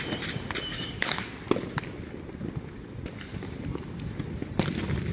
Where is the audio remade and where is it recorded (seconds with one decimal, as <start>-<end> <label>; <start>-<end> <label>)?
0.0-0.7 recorded; 0.7-1.3 remade; 1.3-5.1 recorded